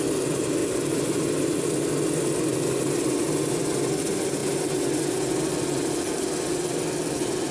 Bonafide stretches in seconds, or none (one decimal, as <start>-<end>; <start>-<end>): 0.0-7.5